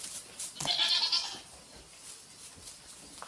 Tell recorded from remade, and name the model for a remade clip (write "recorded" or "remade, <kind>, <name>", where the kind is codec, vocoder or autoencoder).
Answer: recorded